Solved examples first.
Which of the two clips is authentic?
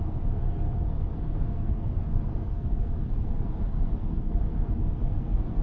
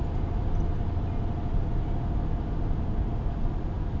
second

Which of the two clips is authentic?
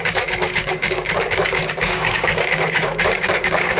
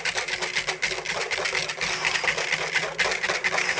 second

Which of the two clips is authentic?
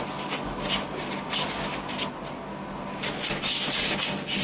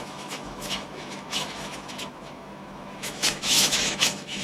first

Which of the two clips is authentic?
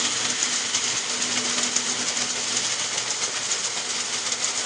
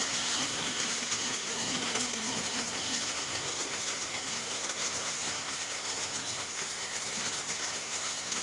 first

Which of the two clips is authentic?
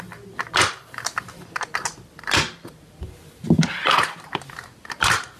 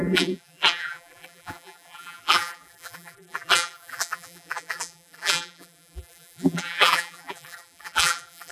first